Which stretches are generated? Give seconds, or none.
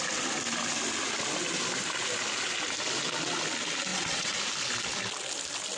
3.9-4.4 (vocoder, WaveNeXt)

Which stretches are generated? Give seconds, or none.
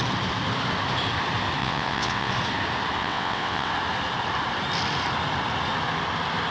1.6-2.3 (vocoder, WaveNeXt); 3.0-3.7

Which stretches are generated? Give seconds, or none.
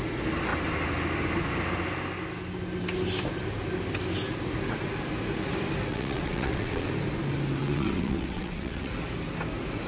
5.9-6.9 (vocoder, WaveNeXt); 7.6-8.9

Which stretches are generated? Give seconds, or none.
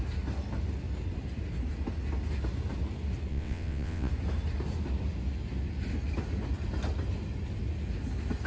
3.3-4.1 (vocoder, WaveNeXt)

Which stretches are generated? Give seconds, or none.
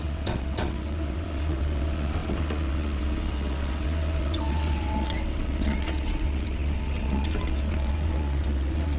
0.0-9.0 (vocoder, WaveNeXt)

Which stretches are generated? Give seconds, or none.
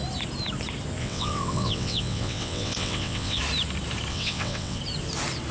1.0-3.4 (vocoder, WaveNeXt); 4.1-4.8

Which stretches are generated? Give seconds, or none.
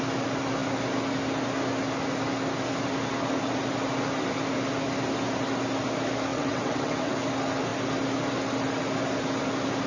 6.3-7.1 (vocoder, WaveNeXt)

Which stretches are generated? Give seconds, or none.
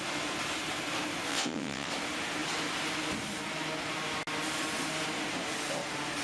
1.3-1.9 (vocoder, WaveNeXt)